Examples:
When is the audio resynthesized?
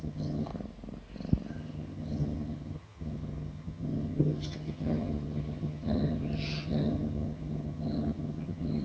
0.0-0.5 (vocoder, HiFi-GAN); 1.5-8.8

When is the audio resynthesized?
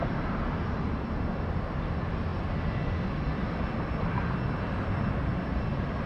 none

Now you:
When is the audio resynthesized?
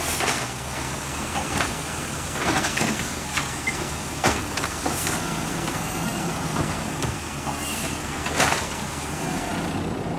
0.0-9.5 (codec, SNAC)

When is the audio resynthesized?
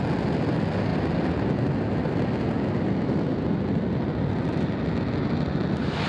none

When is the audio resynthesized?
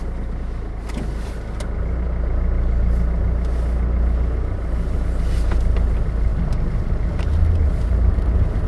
none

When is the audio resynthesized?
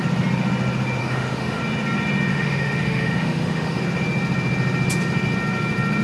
1.0-1.6 (autoencoder, DAC-VAE); 2.3-3.8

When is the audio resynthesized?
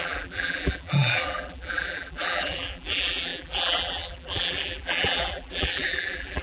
0.0-6.4 (vocoder, BigVGAN v2)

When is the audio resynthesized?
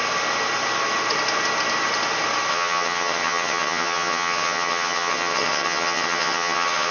2.5-6.9 (vocoder, HiFi-GAN)